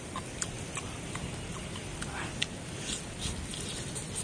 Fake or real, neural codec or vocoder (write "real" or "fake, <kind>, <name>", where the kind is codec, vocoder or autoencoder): real